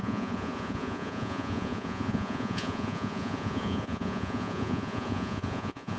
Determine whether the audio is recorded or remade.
remade